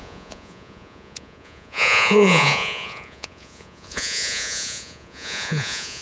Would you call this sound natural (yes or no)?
no